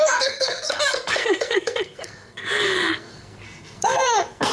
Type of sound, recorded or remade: remade